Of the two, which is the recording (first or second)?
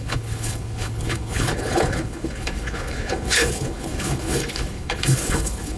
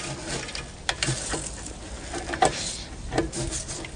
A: second